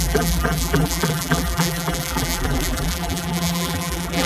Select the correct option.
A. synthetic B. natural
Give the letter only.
A